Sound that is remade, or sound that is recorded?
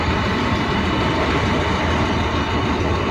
recorded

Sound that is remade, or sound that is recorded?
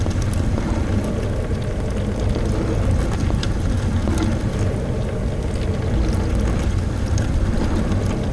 recorded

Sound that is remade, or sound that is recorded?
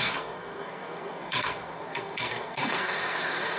remade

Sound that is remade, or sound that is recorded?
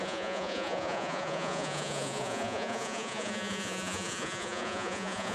remade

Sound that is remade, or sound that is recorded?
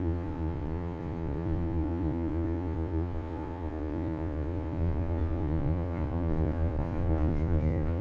remade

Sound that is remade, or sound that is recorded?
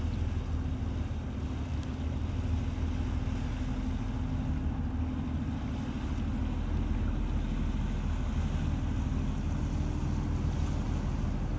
recorded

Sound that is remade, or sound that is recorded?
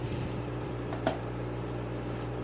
remade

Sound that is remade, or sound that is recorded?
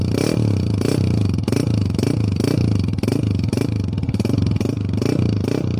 recorded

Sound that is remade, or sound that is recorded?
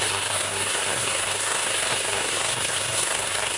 remade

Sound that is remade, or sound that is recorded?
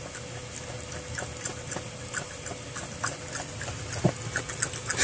recorded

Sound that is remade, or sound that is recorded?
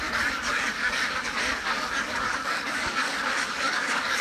remade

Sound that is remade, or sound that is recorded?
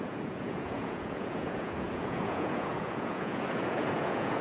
remade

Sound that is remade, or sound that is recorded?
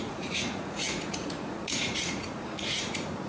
remade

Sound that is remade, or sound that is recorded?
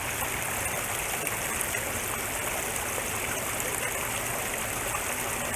recorded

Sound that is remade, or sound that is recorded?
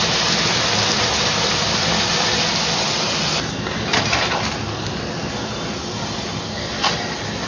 recorded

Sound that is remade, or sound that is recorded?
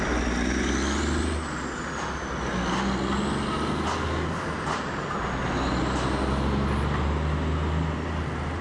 recorded